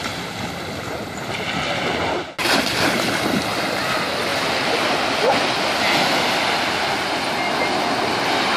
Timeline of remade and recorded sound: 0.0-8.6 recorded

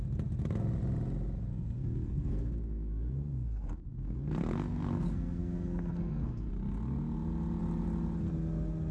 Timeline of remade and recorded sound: 0.0-1.5 recorded; 1.5-6.5 remade; 6.5-8.9 recorded